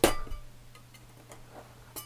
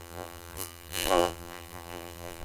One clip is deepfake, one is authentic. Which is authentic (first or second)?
first